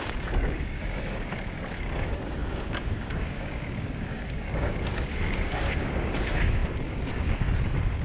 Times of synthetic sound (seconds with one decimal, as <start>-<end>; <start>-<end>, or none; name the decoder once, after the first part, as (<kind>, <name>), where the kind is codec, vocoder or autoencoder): 0.0-8.0 (codec, DAC)